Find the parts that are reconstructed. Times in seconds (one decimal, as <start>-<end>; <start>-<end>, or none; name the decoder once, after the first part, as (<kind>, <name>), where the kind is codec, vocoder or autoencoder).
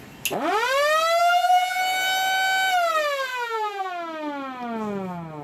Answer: 1.2-1.8 (vocoder, BigVGAN v2); 3.3-3.9